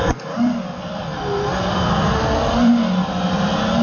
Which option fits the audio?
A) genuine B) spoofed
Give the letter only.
A